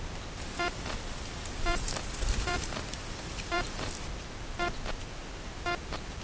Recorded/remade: remade